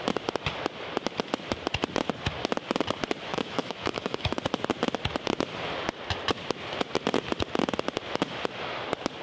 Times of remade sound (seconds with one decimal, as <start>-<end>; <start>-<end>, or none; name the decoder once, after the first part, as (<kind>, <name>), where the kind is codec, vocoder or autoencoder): 3.3-4.4 (autoencoder, DAC-VAE)